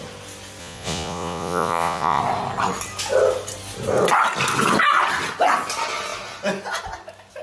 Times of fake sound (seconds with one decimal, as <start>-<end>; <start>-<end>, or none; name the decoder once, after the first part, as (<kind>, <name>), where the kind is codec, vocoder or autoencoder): 0.6-2.2 (vocoder, Vocos)